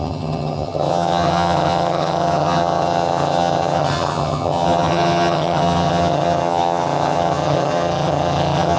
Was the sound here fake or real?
fake